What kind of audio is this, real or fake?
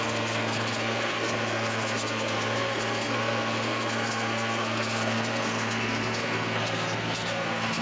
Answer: fake